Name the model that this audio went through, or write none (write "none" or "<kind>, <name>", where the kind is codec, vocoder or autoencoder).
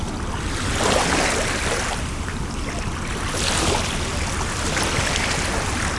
none